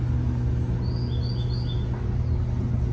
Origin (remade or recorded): recorded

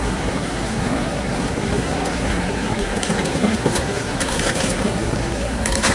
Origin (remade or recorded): remade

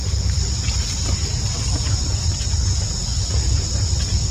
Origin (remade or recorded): recorded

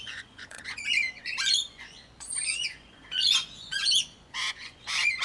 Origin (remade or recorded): remade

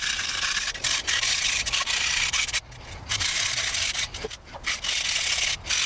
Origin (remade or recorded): recorded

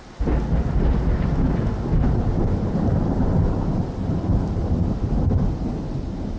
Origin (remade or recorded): recorded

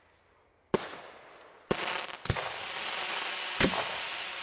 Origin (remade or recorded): recorded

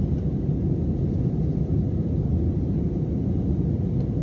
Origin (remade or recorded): recorded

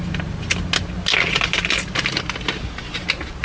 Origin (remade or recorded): recorded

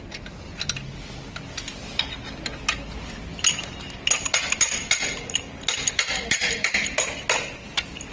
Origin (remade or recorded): recorded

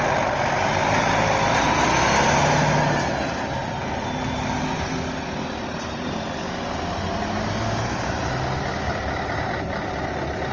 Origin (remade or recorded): recorded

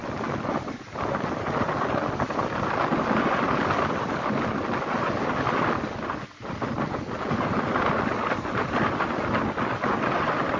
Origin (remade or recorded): recorded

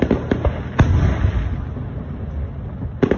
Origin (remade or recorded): recorded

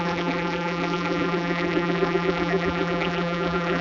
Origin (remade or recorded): remade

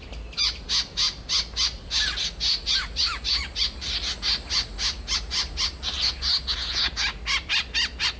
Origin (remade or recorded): recorded